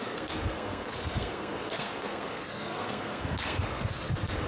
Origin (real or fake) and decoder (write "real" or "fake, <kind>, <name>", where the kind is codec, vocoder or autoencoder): fake, codec, SNAC